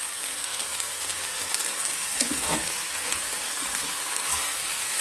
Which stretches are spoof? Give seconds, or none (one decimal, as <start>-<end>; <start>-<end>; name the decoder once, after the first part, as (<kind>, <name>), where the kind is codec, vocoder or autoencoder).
0.0-5.0 (codec, SNAC)